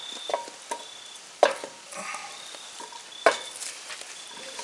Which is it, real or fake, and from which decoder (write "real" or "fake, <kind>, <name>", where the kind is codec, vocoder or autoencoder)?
real